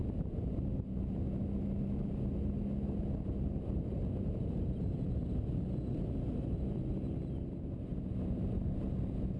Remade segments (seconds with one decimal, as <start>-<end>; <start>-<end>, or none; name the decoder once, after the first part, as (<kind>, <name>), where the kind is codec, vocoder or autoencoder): none